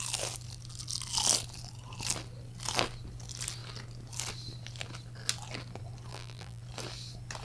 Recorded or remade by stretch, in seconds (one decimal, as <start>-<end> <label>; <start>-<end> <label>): 0.0-6.1 recorded; 6.1-6.6 remade; 6.6-7.4 recorded